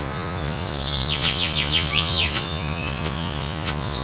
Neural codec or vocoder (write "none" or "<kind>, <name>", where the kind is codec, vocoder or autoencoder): vocoder, Vocos